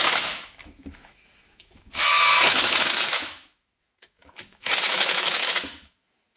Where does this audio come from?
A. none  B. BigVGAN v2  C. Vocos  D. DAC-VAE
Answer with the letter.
D